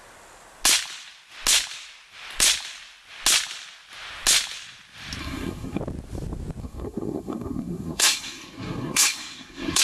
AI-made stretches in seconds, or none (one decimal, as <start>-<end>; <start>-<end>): 5.2-5.8; 6.6-9.8